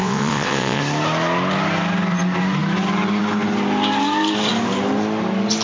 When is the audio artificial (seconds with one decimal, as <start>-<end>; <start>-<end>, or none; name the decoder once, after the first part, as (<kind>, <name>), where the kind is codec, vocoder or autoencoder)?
0.0-0.8 (vocoder, WaveNeXt)